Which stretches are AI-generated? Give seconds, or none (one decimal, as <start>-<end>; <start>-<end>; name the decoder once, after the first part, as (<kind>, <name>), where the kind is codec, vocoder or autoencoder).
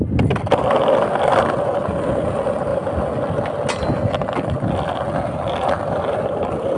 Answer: none